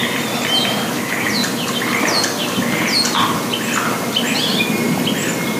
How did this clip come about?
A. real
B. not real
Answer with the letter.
A